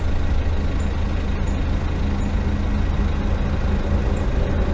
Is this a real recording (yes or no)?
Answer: yes